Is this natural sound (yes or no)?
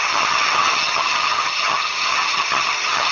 no